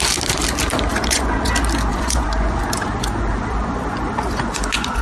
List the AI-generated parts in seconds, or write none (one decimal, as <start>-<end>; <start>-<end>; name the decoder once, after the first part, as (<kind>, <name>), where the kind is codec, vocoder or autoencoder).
0.9-1.5 (vocoder, Vocos); 1.9-5.0